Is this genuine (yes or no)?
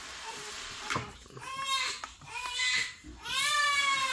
no